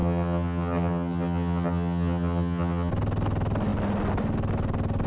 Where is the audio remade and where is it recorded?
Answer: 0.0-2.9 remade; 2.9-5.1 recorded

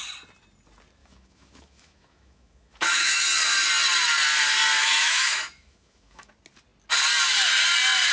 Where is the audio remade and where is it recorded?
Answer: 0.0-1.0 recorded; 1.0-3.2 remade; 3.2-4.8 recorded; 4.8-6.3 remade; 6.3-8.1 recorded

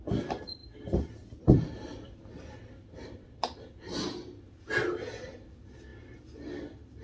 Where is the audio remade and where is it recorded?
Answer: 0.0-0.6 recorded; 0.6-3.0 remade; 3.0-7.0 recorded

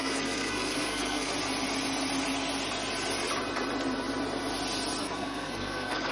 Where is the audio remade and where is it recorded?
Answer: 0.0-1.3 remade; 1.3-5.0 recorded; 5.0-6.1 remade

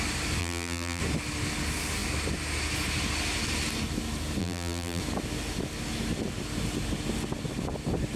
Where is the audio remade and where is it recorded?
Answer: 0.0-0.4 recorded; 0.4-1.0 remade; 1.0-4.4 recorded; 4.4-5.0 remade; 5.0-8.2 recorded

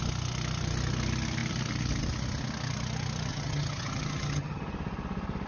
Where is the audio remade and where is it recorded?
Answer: 0.0-3.3 recorded; 3.3-4.6 remade; 4.6-5.5 recorded